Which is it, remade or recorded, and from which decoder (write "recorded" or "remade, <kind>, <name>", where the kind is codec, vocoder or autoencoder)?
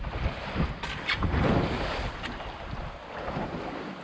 recorded